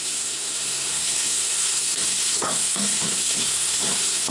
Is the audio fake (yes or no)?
yes